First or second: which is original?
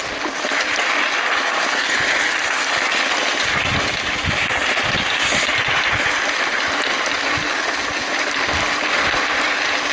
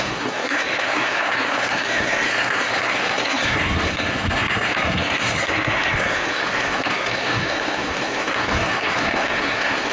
first